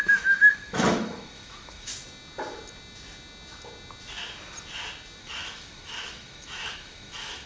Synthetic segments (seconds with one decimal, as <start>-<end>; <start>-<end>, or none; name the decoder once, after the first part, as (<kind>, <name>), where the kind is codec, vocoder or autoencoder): 0.0-1.9 (autoencoder, DAC-VAE); 5.2-7.5